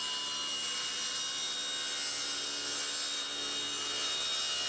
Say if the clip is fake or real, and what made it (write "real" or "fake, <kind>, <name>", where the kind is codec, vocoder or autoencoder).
real